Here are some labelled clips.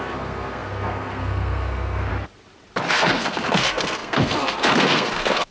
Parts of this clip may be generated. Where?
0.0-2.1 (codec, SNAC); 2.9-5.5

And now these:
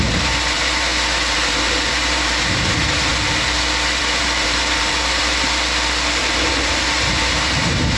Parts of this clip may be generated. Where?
0.0-3.1 (vocoder, BigVGAN v2); 4.0-5.2; 6.2-8.0